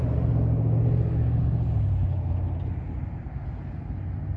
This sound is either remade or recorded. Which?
recorded